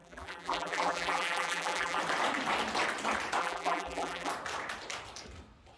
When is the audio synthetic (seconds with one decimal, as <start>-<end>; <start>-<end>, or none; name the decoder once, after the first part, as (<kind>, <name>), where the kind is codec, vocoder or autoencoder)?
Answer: 0.0-2.0 (vocoder, BigVGAN v2); 3.4-4.3

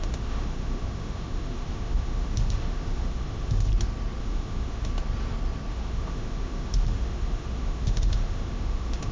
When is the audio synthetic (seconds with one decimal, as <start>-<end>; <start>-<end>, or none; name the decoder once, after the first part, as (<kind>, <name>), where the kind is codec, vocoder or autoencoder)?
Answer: 0.0-3.7 (autoencoder, DAC-VAE); 4.2-4.9; 5.7-9.1